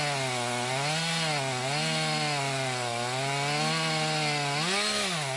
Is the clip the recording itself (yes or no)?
yes